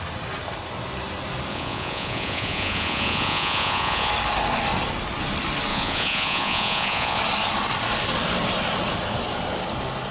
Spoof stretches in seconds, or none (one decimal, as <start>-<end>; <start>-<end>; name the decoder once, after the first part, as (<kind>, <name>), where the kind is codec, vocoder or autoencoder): 1.5-4.1 (vocoder, Vocos); 5.7-7.2